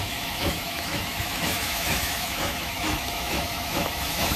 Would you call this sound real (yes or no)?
no